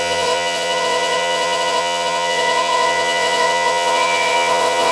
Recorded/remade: remade